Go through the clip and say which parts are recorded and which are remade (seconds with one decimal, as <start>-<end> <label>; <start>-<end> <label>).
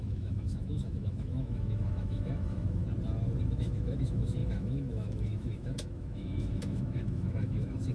0.0-2.8 remade; 2.8-3.4 recorded; 3.4-7.9 remade